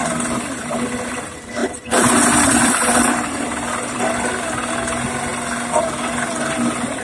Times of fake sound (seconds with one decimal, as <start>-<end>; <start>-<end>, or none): 1.6-4.3